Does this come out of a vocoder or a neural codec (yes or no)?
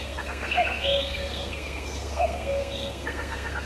yes